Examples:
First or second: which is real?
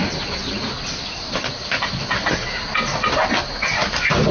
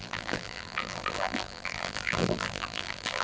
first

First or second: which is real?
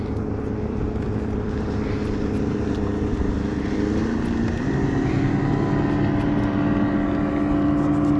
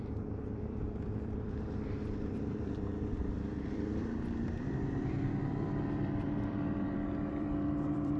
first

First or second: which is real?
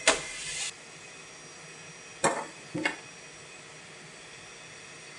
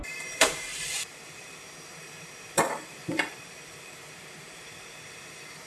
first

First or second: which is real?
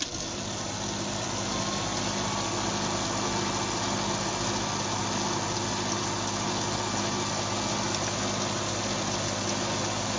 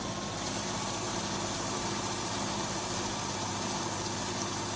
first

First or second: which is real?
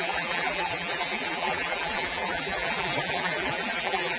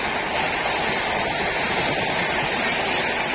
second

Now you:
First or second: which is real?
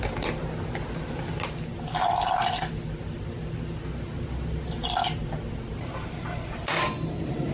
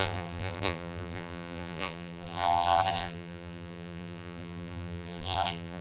first